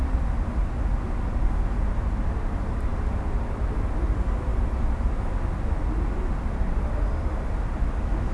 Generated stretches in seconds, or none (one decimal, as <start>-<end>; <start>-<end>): none